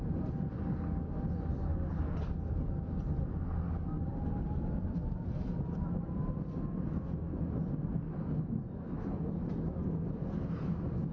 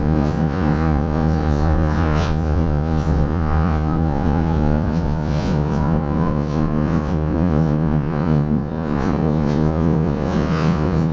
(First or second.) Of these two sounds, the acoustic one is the first